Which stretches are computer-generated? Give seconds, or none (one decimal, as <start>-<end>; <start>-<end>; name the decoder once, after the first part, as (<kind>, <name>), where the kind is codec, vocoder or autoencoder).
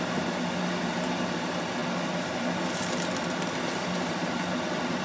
none